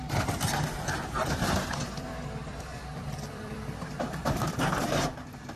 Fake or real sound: fake